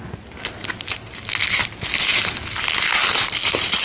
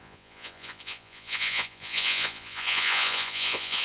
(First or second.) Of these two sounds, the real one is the first